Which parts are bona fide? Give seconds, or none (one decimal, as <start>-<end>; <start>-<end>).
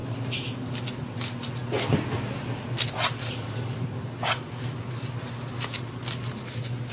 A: 0.0-6.9